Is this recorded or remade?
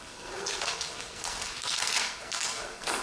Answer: remade